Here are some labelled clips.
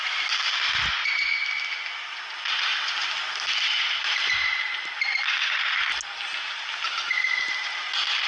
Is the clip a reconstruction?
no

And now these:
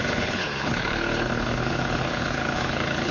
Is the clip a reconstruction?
yes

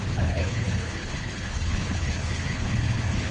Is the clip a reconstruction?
yes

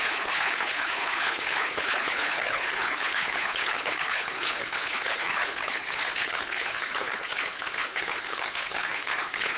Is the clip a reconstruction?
yes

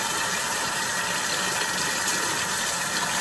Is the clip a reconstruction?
no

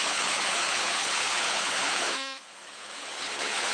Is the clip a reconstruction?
yes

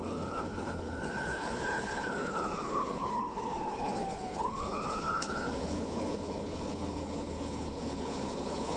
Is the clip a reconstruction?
yes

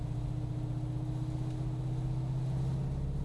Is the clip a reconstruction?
no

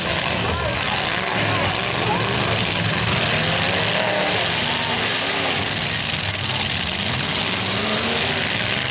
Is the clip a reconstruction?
no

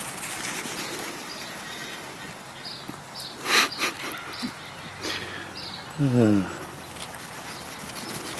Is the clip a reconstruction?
no